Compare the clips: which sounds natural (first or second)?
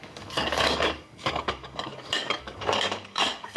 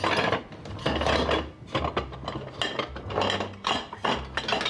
second